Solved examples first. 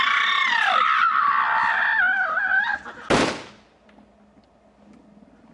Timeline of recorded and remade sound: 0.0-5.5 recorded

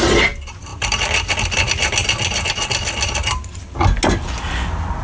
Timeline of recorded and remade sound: 0.0-0.7 recorded; 0.7-1.3 remade; 1.3-5.0 recorded

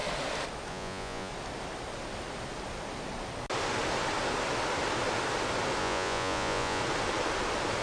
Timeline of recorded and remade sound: 0.0-0.7 recorded; 0.7-1.3 remade; 1.3-5.8 recorded; 5.8-6.8 remade; 6.8-7.8 recorded

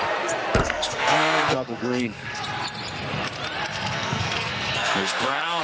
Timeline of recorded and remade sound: 0.0-0.6 recorded; 0.6-2.4 remade; 2.4-3.7 recorded; 3.7-5.6 remade

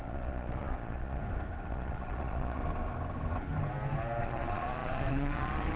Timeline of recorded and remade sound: 0.0-1.2 remade; 1.2-1.7 recorded; 1.7-2.6 remade; 2.6-4.2 recorded; 4.2-5.8 remade

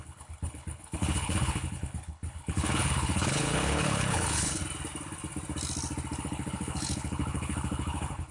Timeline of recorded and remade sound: 0.0-4.6 remade; 4.6-6.2 recorded; 6.2-8.3 remade